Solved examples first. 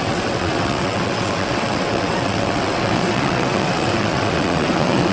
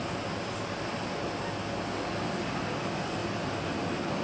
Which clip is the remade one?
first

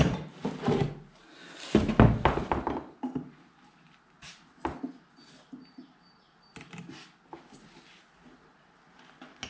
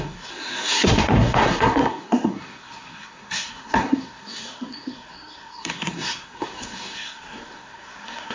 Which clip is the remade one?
second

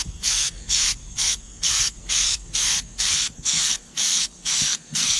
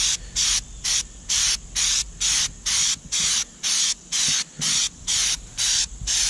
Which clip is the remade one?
first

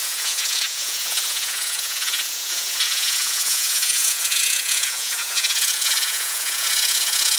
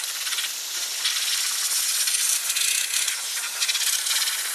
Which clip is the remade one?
first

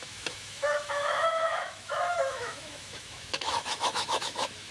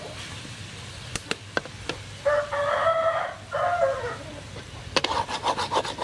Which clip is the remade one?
first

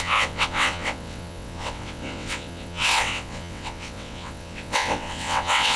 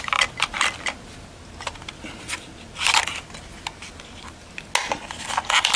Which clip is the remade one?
first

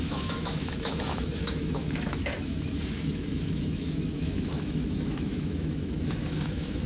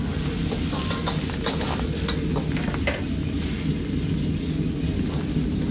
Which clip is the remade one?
first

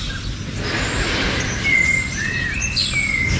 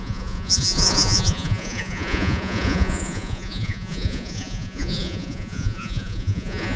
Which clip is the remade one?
second